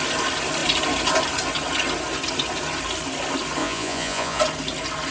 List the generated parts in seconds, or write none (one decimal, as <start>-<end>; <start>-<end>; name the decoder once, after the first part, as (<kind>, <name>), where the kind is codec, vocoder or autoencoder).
3.6-4.4 (vocoder, Vocos)